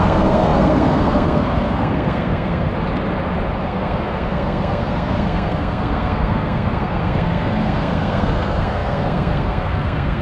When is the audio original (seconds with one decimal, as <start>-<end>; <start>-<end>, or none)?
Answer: 2.7-3.6